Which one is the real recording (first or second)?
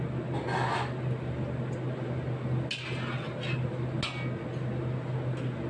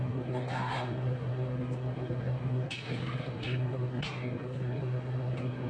first